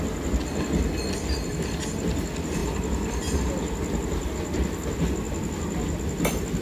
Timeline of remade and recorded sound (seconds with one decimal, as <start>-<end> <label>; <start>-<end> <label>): 0.0-6.6 recorded